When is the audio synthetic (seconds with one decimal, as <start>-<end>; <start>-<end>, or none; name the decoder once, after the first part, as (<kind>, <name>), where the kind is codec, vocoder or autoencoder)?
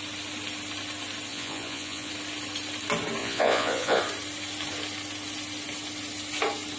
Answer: 1.3-2.1 (vocoder, Vocos); 3.2-4.0